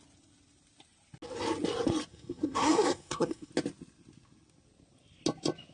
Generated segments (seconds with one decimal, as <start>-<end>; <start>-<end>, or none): 2.1-3.5